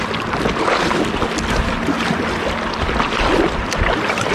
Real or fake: real